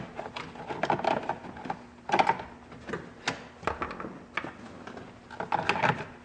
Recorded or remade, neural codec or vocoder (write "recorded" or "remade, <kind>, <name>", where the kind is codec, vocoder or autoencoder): recorded